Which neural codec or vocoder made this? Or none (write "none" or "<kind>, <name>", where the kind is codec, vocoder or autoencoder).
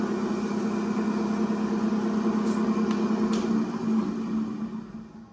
none